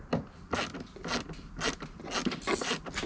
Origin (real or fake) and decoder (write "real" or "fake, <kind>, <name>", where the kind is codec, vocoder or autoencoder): real